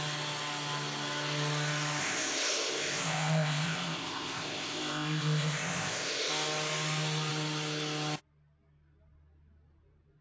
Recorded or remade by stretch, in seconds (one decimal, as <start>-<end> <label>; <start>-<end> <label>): 0.0-2.0 recorded; 2.0-6.3 remade; 6.3-10.2 recorded